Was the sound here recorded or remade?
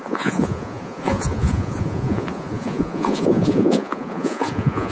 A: remade